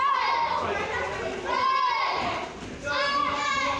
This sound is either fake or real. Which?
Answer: real